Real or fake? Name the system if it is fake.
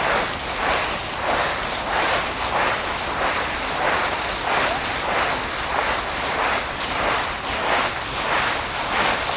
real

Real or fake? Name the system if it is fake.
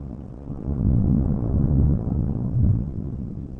fake, vocoder, WaveNeXt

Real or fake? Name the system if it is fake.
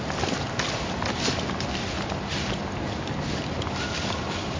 real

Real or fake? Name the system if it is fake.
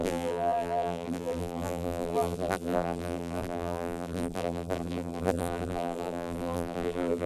fake, vocoder, BigVGAN v2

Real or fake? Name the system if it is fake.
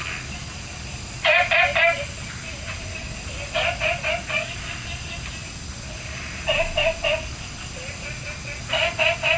real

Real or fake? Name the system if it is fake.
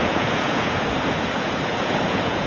fake, vocoder, Vocos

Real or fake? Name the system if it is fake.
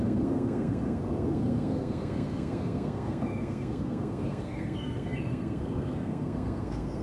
fake, codec, SNAC